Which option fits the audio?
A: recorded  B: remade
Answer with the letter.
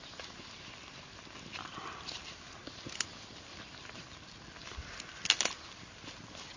A